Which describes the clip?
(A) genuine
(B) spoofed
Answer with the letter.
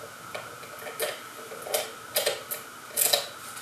A